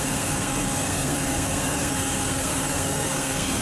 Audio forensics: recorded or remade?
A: remade